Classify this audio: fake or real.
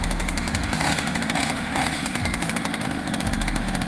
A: fake